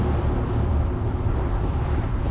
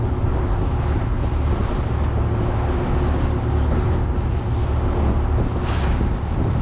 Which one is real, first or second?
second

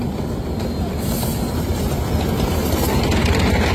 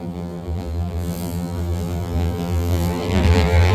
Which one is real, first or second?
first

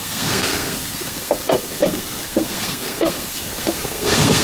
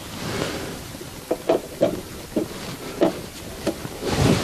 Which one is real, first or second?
second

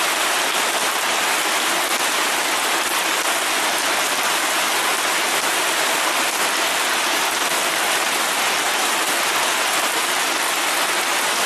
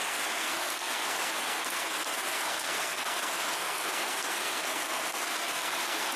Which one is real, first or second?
first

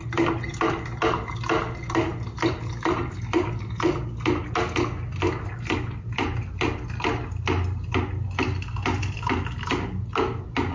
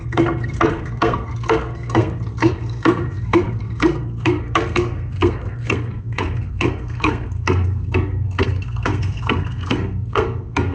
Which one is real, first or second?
first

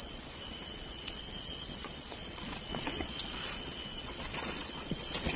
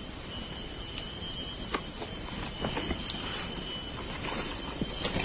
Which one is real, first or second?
second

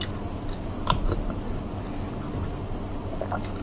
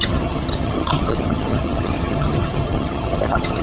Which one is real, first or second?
first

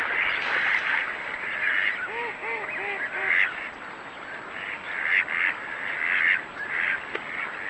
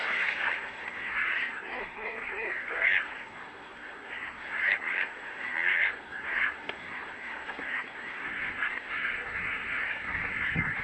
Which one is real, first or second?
first